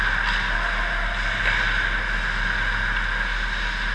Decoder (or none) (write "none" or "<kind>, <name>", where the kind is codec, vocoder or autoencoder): none